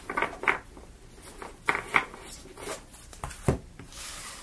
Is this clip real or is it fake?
real